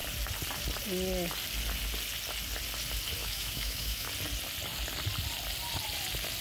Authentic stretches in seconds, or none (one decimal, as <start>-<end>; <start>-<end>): 0.0-3.2; 4.1-6.4